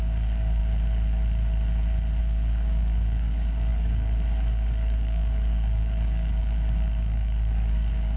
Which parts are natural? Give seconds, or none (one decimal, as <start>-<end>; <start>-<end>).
0.6-2.2